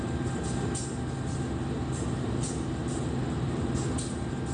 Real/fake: real